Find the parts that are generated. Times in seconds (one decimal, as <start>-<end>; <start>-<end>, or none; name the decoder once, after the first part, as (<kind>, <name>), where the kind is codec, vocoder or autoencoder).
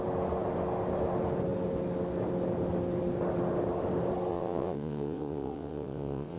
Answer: 4.3-6.4 (vocoder, WaveNeXt)